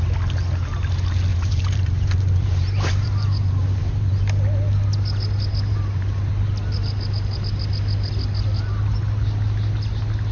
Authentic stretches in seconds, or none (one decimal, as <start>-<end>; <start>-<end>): 0.0-1.3; 4.2-5.7; 6.3-10.3